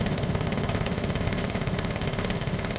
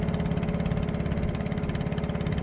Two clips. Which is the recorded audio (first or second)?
second